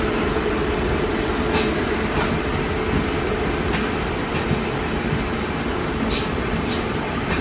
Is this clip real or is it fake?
real